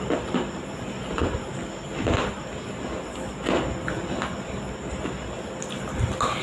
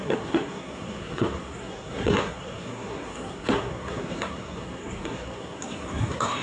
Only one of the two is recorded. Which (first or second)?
first